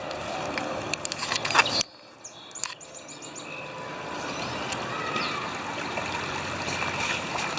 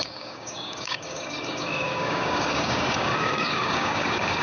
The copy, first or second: second